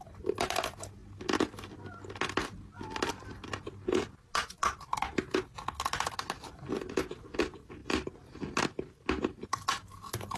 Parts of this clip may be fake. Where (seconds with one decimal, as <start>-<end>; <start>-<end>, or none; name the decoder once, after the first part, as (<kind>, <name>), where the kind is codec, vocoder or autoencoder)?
none